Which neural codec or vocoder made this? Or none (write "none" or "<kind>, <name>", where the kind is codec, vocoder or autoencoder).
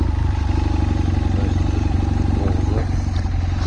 none